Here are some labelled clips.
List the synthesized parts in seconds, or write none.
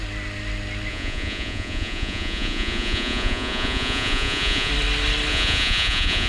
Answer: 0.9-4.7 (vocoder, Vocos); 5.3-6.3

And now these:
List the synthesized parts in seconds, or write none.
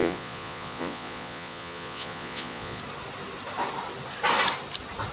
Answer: 0.0-2.8 (vocoder, Vocos)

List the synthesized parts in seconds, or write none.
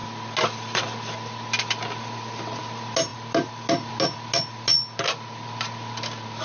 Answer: none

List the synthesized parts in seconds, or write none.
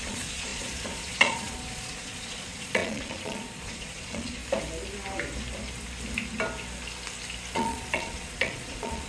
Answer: 0.0-4.4 (vocoder, Vocos); 7.5-9.1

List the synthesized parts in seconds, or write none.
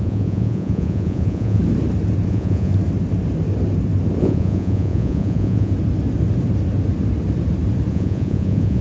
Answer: 0.0-1.6 (vocoder, Vocos); 2.3-2.7; 4.2-5.7; 7.9-8.8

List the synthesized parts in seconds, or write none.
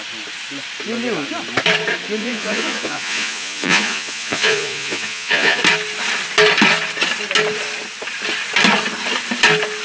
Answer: 2.2-5.6 (vocoder, Vocos)